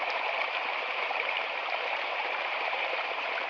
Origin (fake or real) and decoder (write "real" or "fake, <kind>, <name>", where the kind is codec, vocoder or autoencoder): fake, vocoder, BigVGAN v2